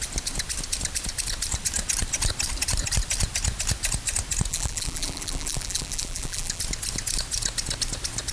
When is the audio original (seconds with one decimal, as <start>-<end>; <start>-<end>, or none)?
0.0-4.5; 6.6-8.3